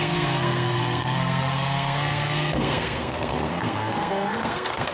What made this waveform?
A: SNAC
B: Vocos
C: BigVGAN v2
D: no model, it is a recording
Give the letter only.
A